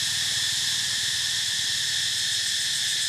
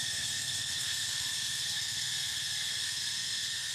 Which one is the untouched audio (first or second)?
first